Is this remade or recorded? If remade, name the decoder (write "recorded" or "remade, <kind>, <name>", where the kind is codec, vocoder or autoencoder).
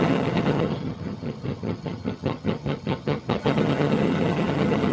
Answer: remade, vocoder, HiFi-GAN